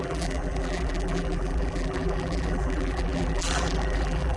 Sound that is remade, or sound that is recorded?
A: remade